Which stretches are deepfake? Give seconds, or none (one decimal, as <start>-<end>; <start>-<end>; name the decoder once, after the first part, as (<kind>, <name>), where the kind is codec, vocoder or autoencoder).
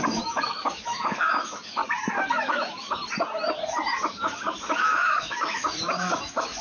0.0-1.8 (autoencoder, DAC-VAE); 2.3-3.0; 4.1-6.6